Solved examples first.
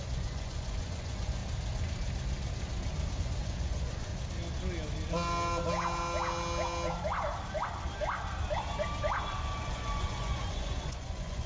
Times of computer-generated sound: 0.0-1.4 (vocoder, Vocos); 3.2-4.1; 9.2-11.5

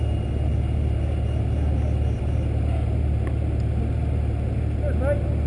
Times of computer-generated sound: none

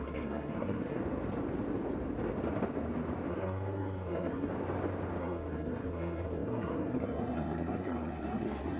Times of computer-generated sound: 0.0-1.0 (codec, SNAC); 3.3-4.5; 5.2-8.8

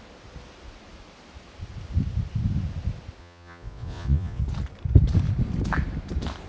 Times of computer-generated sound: 3.2-4.4 (vocoder, Vocos)

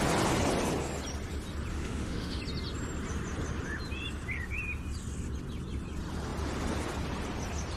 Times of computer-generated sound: 1.7-2.4 (autoencoder, DAC-VAE)

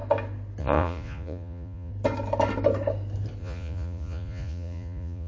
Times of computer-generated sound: 0.6-1.9 (vocoder, Vocos); 3.4-5.3